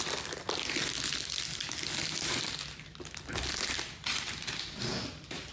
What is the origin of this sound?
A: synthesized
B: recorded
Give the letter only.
B